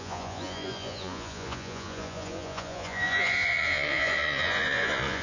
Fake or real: fake